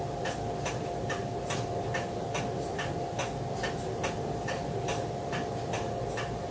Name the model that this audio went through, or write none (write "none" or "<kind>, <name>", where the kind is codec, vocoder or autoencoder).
none